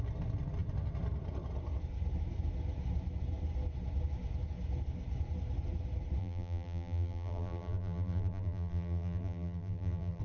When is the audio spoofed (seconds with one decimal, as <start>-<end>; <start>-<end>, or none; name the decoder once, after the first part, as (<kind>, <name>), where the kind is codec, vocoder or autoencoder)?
6.2-10.2 (vocoder, BigVGAN v2)